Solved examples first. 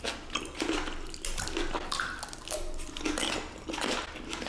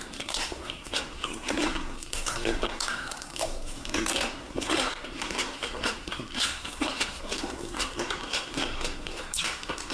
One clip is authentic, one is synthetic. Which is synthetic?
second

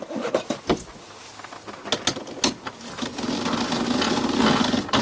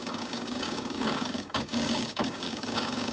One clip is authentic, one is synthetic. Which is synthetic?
second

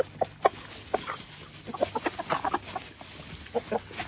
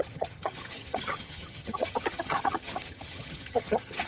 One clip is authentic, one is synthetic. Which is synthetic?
second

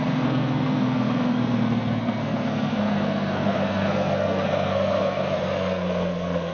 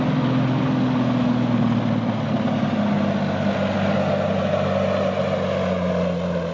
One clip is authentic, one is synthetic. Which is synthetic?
first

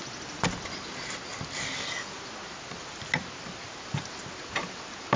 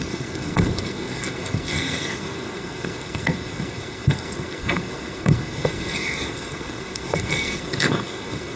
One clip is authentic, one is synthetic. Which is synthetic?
second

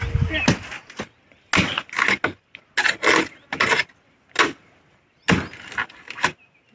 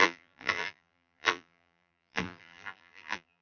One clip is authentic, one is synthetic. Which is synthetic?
second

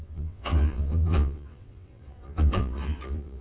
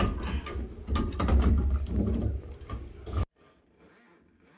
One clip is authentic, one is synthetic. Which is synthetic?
first